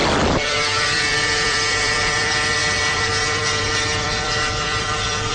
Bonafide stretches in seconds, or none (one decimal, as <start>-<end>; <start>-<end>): none

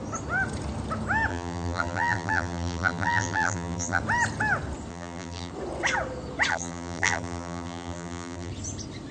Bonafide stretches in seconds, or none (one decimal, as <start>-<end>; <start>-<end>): 0.0-1.3; 4.0-4.9; 5.5-6.5; 8.5-9.1